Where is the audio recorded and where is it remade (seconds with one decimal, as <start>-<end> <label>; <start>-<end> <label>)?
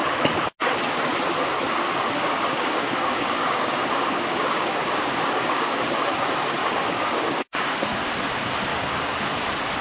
0.0-2.2 recorded; 2.2-6.1 remade; 6.1-6.6 recorded; 6.6-7.8 remade; 7.8-8.7 recorded; 8.7-9.2 remade; 9.2-9.8 recorded